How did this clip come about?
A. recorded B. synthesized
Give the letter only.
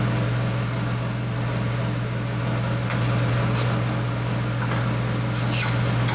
A